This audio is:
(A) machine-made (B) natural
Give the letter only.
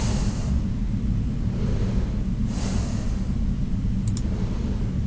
B